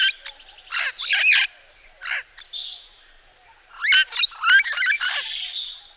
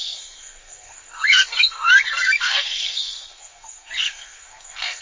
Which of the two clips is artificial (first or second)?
second